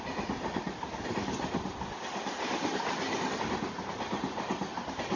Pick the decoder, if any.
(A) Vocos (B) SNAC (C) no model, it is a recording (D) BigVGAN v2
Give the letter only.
C